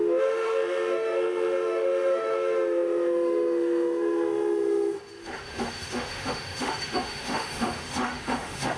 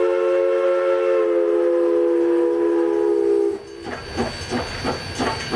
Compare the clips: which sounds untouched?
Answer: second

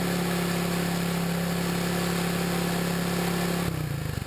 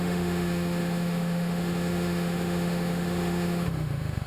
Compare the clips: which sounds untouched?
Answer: first